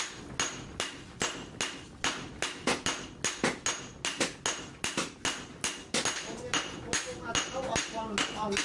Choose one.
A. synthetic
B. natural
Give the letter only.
B